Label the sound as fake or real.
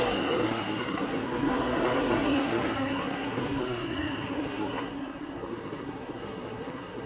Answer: fake